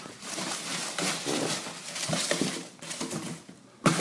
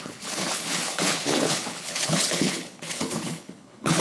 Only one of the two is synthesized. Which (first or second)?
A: second